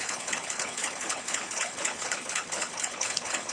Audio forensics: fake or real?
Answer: fake